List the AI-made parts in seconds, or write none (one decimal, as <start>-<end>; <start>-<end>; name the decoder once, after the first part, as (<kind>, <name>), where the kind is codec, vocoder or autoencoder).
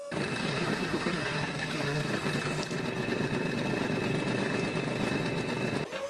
0.4-2.1 (codec, SNAC)